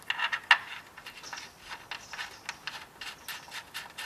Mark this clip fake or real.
real